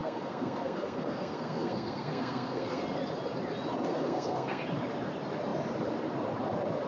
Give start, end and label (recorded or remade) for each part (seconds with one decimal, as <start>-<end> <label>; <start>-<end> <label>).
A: 0.0-2.8 remade; 2.8-3.9 recorded; 3.9-4.6 remade; 4.6-6.9 recorded